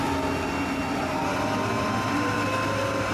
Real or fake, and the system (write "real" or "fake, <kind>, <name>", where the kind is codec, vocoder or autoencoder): real